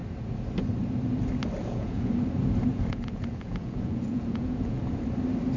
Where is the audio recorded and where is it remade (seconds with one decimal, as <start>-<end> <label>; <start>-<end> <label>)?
0.0-1.6 recorded; 1.6-2.1 remade; 2.1-2.7 recorded; 2.7-4.8 remade; 4.8-5.6 recorded